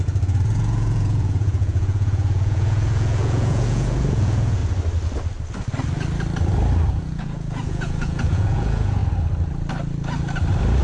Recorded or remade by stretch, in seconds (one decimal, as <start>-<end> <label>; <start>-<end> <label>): 0.0-4.6 remade; 4.6-6.9 recorded; 6.9-9.0 remade; 9.0-10.8 recorded